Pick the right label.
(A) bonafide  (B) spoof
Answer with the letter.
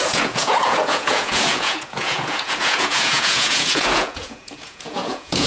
B